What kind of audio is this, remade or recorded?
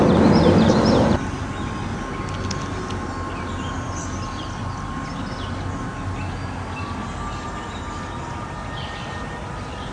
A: recorded